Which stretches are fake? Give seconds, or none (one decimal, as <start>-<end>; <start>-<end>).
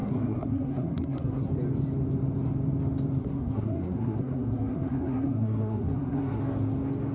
0.0-1.5; 3.2-6.4